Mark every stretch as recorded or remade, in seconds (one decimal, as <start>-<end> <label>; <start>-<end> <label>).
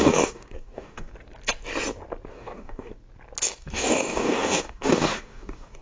0.0-1.1 remade; 1.1-2.3 recorded; 2.3-2.9 remade; 2.9-3.6 recorded; 3.6-5.8 remade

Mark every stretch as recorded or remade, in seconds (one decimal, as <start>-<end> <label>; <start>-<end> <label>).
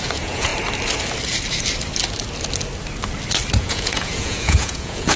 0.0-0.5 remade; 0.5-3.6 recorded; 3.6-5.2 remade